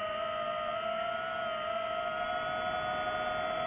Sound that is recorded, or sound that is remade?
recorded